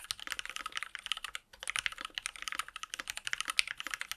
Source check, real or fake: real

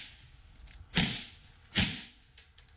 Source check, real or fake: real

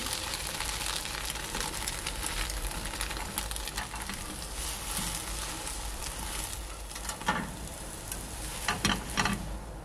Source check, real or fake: real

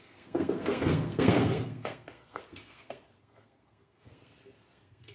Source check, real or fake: fake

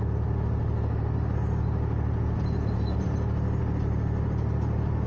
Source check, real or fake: real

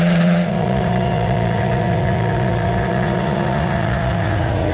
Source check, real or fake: fake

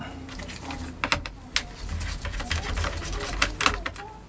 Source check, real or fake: real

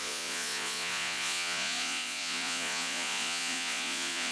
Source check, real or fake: fake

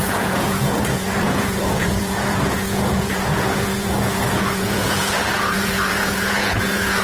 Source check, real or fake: fake